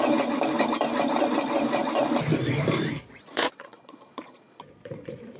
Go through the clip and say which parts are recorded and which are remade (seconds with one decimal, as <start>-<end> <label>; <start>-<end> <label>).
0.0-2.9 recorded; 2.9-5.4 remade